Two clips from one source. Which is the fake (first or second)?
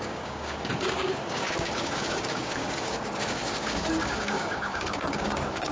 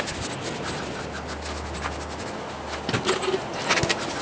first